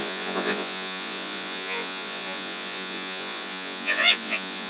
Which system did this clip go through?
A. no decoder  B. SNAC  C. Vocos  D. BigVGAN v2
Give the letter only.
C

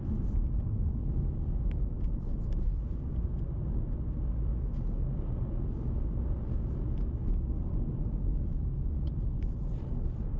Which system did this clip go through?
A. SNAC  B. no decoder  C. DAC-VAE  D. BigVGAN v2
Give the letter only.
B